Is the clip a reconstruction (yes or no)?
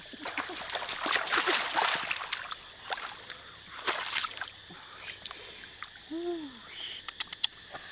no